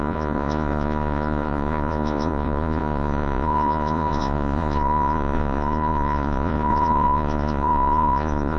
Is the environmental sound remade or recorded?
remade